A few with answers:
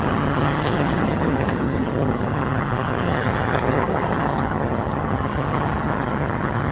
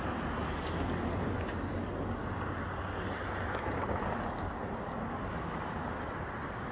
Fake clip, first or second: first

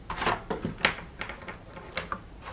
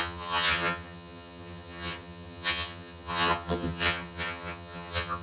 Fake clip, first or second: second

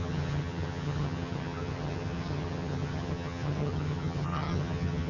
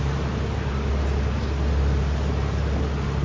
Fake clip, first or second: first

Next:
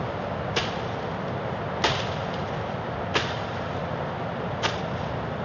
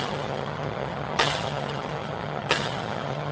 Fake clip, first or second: second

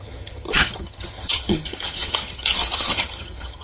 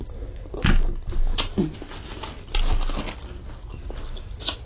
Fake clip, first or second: first